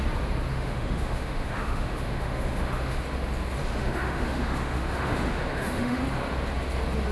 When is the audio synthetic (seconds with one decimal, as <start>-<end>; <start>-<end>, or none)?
0.5-3.0; 3.6-6.0